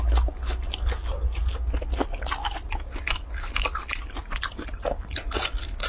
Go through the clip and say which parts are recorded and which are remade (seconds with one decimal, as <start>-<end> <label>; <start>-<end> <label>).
0.0-5.9 recorded